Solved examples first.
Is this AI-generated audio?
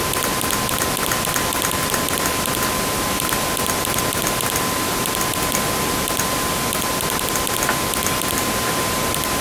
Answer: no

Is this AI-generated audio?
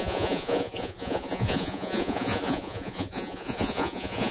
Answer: yes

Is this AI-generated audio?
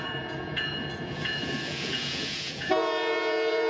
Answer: yes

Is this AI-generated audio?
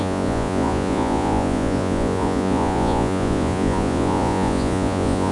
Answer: yes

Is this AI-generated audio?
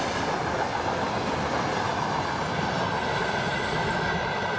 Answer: no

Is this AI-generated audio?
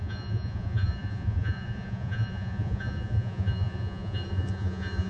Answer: yes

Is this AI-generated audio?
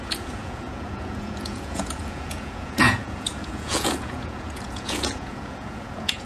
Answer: yes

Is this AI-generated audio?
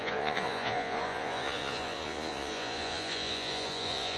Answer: yes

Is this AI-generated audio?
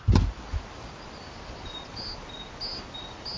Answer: no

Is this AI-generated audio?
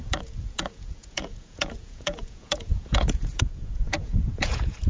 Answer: yes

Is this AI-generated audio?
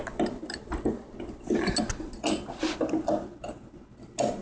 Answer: no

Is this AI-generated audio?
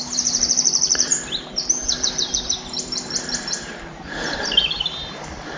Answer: no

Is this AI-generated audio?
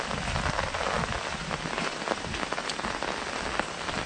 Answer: no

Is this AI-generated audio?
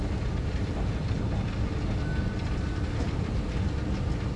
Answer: no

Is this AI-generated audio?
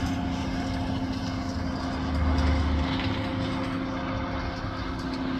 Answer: no